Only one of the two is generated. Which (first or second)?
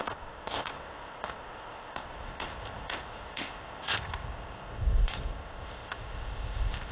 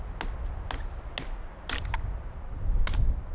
first